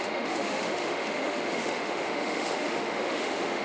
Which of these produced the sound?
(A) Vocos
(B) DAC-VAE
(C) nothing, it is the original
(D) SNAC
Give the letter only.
B